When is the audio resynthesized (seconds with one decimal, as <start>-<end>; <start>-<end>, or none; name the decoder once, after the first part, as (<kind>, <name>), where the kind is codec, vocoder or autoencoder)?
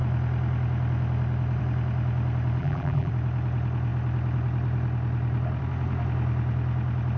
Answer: 2.6-3.1 (vocoder, BigVGAN v2)